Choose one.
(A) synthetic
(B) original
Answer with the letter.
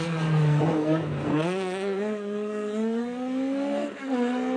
A